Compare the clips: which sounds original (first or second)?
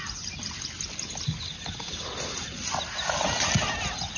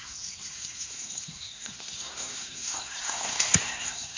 first